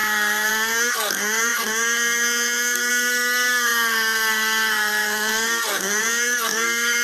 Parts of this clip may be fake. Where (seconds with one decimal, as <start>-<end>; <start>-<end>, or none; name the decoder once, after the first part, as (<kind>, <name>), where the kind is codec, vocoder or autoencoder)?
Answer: 0.0-7.0 (codec, SNAC)